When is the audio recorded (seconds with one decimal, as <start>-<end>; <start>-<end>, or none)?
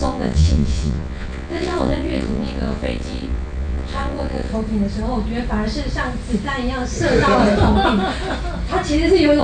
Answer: 4.5-9.4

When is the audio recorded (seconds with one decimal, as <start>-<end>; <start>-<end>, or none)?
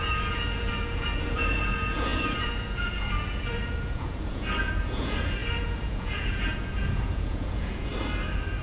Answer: 7.9-8.6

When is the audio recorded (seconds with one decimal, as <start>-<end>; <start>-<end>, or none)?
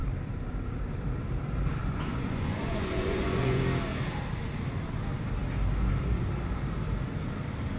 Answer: 0.0-1.8; 3.6-7.8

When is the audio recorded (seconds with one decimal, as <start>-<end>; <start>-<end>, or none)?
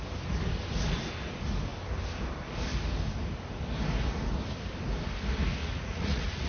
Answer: 0.0-5.6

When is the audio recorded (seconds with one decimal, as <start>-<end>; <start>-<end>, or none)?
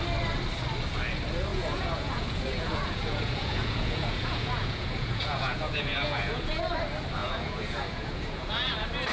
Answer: 0.0-1.5; 6.6-7.2; 8.7-9.1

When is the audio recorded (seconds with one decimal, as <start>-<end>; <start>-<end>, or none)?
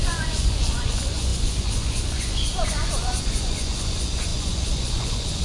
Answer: none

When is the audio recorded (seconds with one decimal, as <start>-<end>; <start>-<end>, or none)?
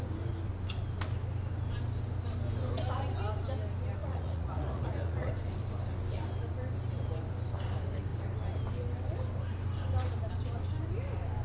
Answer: 0.0-4.0; 5.3-11.4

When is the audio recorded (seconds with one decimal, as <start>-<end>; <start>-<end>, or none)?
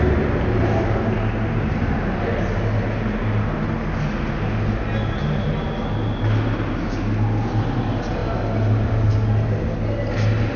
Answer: 0.0-10.6